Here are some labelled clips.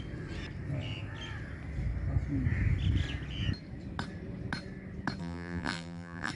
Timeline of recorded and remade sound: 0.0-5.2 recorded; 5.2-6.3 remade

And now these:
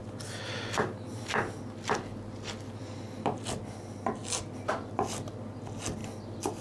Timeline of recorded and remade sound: 0.0-6.6 recorded